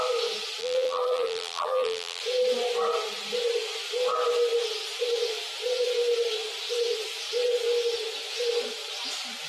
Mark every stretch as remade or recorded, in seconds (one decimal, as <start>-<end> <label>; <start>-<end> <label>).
0.0-0.6 recorded; 0.6-2.2 remade; 2.2-9.5 recorded